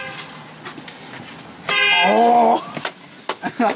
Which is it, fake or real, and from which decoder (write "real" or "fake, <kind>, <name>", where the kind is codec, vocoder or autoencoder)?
real